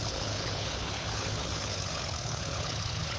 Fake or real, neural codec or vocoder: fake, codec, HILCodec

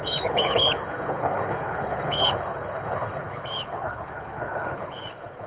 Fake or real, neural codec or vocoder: fake, codec, HILCodec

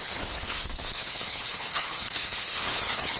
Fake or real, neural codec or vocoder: fake, codec, HILCodec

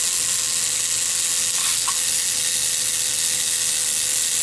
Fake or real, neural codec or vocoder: real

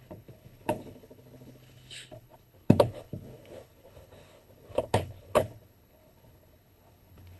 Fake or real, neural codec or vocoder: fake, codec, HILCodec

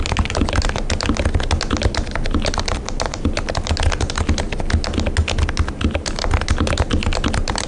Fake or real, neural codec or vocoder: real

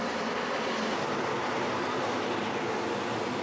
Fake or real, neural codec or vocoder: real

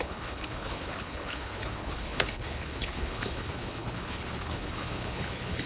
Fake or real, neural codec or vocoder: fake, codec, HILCodec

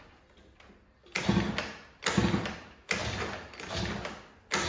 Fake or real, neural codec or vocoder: real